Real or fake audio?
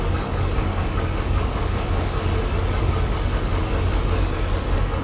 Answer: fake